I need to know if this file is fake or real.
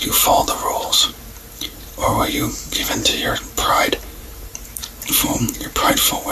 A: fake